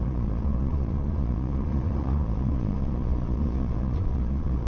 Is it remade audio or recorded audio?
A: remade